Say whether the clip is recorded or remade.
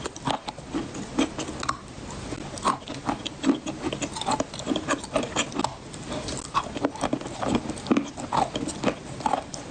recorded